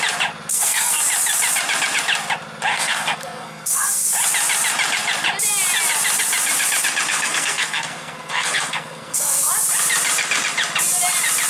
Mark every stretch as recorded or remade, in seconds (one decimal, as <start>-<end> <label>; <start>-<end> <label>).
0.0-0.5 recorded; 0.5-1.0 remade; 1.0-2.7 recorded; 2.7-4.1 remade; 4.1-7.1 recorded; 7.1-9.5 remade; 9.5-11.5 recorded